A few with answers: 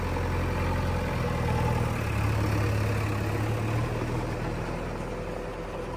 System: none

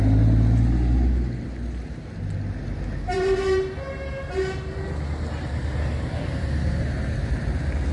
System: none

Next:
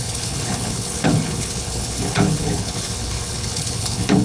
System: codec, HILCodec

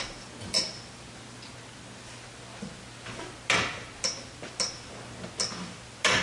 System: none